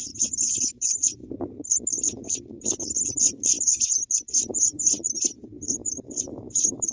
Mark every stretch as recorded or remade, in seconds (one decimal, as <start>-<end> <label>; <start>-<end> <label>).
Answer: 0.0-1.2 remade; 1.2-3.2 recorded; 3.2-6.9 remade